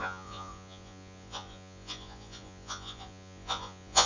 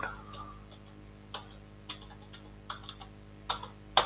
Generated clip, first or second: first